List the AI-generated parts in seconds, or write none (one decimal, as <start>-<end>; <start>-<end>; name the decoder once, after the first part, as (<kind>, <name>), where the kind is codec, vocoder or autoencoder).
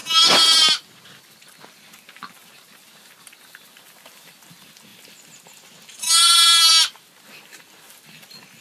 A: none